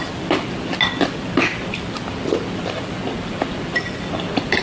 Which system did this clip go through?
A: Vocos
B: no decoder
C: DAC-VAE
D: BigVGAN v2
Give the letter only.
B